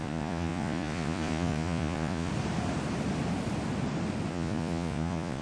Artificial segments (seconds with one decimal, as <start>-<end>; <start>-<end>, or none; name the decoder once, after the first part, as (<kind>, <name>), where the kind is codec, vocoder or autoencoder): 0.0-2.3 (vocoder, Vocos); 4.3-5.4

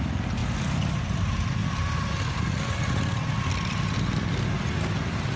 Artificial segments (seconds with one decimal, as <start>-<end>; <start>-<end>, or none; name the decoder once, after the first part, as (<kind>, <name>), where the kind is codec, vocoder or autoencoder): none

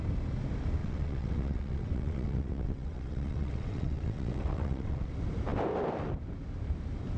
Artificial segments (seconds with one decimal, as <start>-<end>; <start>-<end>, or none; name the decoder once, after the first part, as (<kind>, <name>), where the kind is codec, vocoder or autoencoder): 0.8-5.1 (vocoder, WaveNeXt)

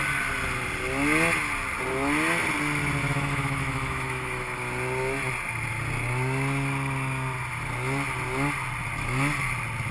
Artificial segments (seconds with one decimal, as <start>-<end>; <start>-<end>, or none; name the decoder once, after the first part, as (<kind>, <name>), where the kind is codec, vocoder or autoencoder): 3.0-4.6 (autoencoder, DAC-VAE)

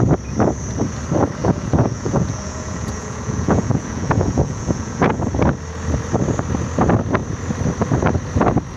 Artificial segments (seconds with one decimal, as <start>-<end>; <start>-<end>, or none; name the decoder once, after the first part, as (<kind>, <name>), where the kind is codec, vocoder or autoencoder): 1.4-5.2 (vocoder, Vocos)